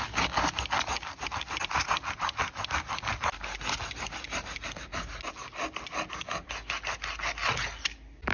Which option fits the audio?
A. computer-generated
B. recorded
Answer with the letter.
B